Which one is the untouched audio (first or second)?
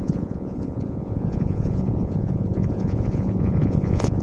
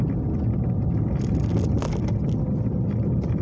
second